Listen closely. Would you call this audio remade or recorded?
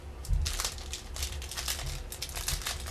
recorded